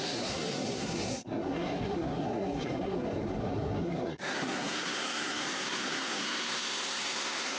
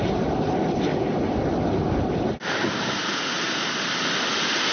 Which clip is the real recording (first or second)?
second